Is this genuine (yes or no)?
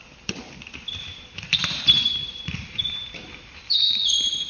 no